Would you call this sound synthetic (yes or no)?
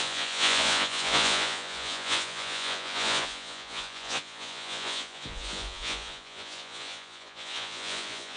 yes